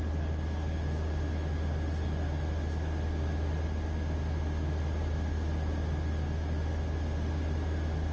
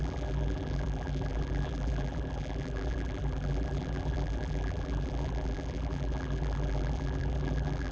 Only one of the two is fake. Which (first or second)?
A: second